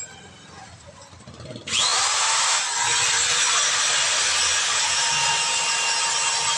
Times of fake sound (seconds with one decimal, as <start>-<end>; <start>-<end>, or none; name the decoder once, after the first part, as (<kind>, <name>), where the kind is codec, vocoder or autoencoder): none